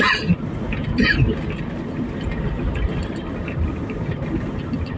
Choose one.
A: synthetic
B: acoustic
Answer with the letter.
B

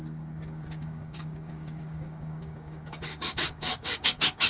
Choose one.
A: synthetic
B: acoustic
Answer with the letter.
A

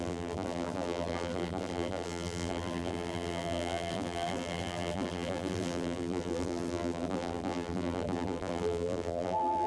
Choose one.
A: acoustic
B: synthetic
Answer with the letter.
B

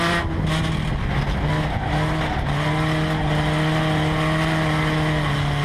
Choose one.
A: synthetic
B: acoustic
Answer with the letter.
B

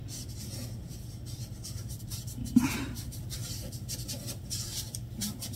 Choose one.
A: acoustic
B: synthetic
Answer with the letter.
A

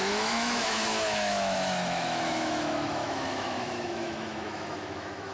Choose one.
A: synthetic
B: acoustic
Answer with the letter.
A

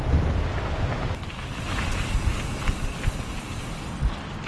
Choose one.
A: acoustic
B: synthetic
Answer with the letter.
A